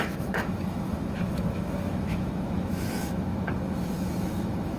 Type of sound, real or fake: fake